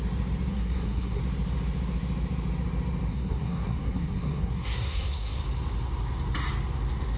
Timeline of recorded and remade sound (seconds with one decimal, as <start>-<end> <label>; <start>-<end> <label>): 0.0-0.5 recorded; 0.5-1.2 remade; 1.2-3.1 recorded; 3.1-5.4 remade; 5.4-7.2 recorded